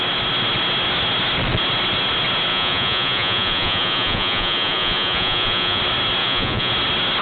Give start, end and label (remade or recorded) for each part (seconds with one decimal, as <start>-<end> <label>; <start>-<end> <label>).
0.0-2.5 recorded; 2.5-5.8 remade; 5.8-6.2 recorded; 6.2-6.7 remade; 6.7-7.2 recorded